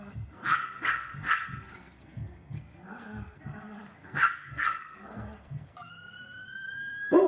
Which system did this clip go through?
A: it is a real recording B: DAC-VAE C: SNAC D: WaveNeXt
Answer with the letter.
C